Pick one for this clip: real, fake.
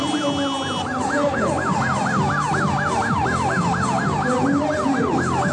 real